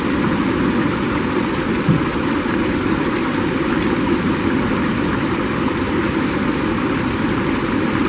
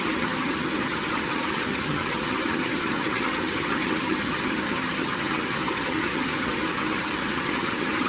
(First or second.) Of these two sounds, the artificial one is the second